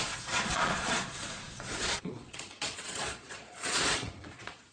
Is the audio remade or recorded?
remade